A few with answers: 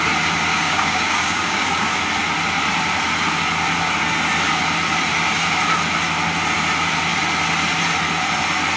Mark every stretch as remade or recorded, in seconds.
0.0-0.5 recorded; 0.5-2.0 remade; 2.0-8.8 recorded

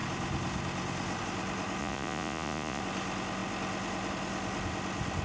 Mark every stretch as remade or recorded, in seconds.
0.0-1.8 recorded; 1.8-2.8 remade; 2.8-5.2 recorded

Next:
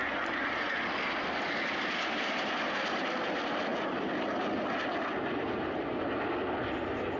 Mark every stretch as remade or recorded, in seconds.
0.0-0.8 remade; 0.8-7.2 recorded

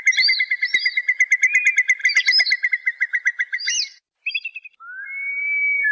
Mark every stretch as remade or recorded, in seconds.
0.0-5.9 recorded

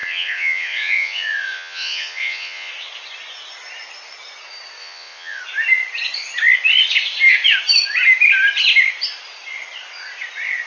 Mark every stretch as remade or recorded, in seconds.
0.0-2.7 remade; 2.7-4.8 recorded; 4.8-5.4 remade; 5.4-10.7 recorded

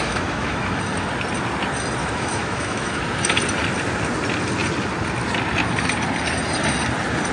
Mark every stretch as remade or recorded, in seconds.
0.0-0.8 remade; 0.8-2.0 recorded; 2.0-3.0 remade; 3.0-7.3 recorded

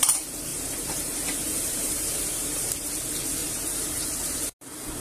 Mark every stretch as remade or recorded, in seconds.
0.0-0.5 recorded; 0.5-2.9 remade; 2.9-3.4 recorded; 3.4-4.5 remade; 4.5-5.0 recorded

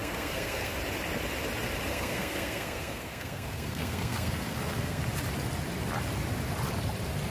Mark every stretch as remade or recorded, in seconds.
0.0-0.7 remade; 0.7-1.9 recorded; 1.9-5.0 remade; 5.0-7.3 recorded